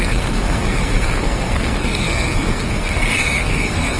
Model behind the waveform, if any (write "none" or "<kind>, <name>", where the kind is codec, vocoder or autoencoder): codec, SNAC